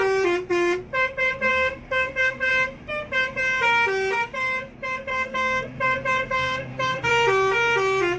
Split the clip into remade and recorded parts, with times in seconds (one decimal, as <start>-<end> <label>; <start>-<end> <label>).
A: 0.0-1.5 recorded; 1.5-2.5 remade; 2.5-5.1 recorded; 5.1-5.8 remade; 5.8-6.2 recorded; 6.2-7.1 remade; 7.1-8.2 recorded